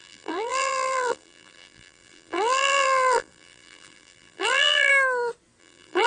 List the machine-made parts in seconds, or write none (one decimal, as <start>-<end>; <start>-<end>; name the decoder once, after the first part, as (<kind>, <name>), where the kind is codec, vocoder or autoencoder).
0.0-4.9 (vocoder, BigVGAN v2); 5.6-6.1